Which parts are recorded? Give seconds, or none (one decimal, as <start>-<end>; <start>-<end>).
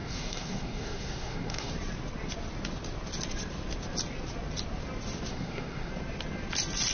1.7-5.3; 5.9-6.9